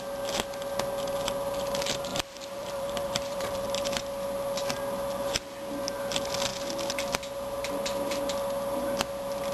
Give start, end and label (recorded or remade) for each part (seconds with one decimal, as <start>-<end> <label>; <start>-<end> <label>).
0.0-2.1 recorded; 2.1-3.8 remade; 3.8-9.5 recorded